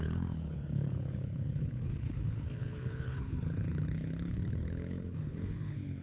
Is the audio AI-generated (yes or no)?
yes